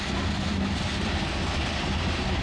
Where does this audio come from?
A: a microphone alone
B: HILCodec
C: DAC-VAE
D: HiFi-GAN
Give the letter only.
A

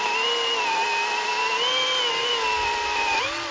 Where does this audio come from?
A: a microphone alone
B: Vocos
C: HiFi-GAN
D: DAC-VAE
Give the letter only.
A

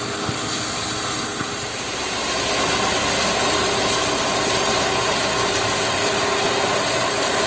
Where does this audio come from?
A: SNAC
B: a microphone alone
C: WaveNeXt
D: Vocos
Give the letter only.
B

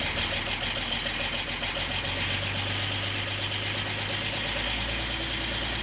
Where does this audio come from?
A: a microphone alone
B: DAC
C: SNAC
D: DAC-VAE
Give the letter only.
A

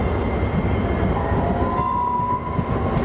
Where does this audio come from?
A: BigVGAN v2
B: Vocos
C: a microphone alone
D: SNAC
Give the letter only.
C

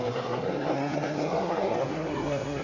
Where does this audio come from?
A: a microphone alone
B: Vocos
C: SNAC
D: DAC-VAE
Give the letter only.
C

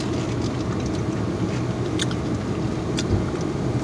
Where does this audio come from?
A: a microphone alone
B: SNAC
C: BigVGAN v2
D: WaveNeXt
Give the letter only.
A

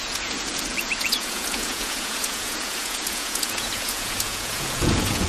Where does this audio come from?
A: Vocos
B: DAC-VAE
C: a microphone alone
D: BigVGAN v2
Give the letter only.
A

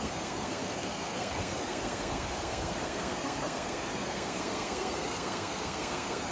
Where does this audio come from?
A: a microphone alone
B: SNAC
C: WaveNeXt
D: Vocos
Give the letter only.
B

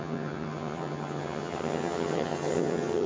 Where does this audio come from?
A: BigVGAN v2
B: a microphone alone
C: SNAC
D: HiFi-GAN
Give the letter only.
D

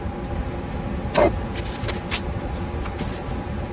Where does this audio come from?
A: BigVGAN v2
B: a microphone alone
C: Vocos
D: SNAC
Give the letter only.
B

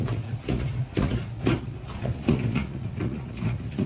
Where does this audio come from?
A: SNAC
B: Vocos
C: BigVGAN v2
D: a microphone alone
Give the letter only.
B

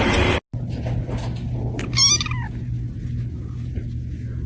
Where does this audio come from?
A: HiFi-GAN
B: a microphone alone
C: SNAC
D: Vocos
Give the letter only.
B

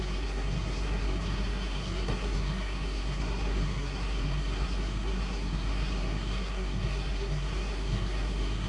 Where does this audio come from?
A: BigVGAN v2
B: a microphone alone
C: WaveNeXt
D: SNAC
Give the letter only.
D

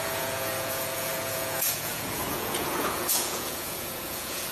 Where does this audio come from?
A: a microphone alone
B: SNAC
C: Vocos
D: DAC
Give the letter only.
C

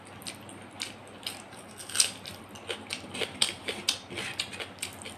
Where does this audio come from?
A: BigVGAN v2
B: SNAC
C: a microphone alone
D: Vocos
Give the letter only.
C